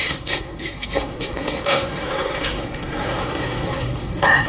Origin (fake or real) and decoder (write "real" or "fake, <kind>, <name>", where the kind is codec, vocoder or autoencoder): fake, codec, SNAC